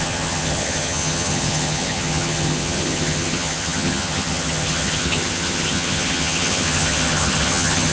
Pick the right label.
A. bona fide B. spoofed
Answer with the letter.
B